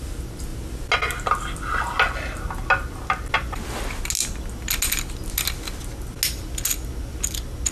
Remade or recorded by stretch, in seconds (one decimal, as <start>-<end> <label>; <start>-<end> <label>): 0.0-7.7 recorded